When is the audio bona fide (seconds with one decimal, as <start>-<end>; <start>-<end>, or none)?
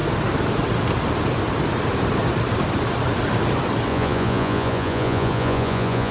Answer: 0.0-3.9